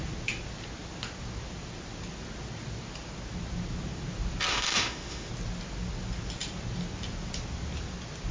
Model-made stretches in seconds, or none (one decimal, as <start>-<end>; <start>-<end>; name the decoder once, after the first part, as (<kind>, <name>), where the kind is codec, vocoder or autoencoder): 4.5-5.3 (autoencoder, DAC-VAE)